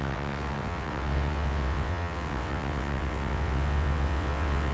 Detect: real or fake fake